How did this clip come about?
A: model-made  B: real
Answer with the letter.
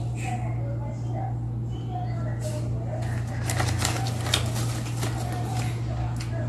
B